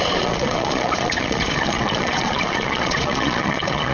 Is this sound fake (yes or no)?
yes